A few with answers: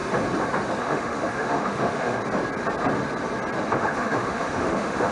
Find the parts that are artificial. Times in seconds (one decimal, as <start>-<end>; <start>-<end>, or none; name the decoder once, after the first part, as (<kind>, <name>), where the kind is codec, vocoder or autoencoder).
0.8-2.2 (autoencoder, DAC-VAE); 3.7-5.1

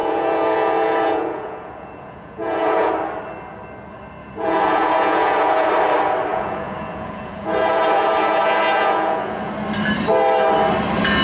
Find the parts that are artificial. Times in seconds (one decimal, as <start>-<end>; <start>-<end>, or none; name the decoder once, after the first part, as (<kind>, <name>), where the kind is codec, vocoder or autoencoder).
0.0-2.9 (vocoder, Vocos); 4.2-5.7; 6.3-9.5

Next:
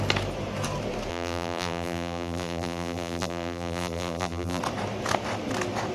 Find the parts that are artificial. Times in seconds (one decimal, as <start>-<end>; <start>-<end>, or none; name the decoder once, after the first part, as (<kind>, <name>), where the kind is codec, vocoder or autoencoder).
1.1-4.6 (vocoder, BigVGAN v2)